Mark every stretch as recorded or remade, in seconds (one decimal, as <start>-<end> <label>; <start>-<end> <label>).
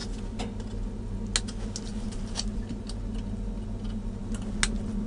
0.0-1.9 recorded; 1.9-2.8 remade; 2.8-5.1 recorded